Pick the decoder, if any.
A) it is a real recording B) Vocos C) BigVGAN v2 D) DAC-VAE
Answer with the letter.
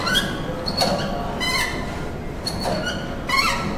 A